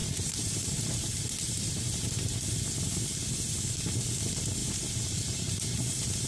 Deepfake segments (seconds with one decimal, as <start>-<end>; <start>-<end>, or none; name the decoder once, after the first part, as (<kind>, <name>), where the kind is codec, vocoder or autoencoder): 0.0-2.1 (vocoder, BigVGAN v2); 4.6-6.3